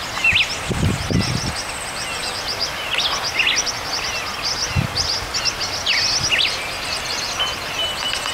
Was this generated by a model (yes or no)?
no